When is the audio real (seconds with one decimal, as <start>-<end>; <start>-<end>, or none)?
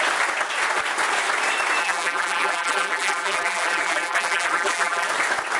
0.0-1.8; 5.1-5.6